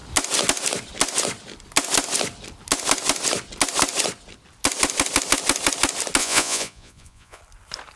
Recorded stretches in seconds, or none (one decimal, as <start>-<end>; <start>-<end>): 0.0-6.2; 7.4-8.0